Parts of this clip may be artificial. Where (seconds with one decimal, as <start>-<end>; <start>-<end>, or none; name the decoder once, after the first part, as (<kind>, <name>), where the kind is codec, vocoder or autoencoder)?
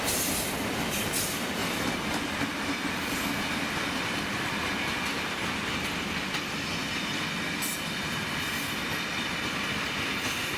none